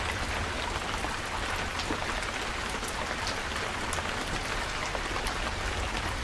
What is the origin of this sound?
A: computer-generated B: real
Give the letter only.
B